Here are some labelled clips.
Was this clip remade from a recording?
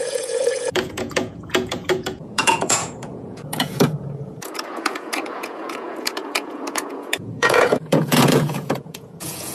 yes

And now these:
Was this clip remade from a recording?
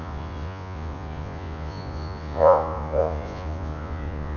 yes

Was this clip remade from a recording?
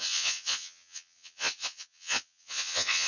yes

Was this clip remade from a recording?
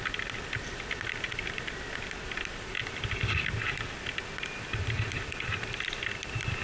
no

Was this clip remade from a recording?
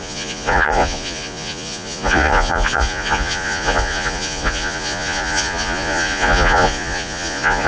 yes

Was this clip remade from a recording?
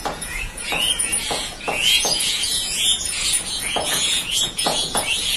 yes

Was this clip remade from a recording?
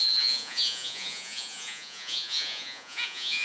yes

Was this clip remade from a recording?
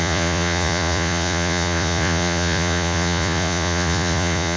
yes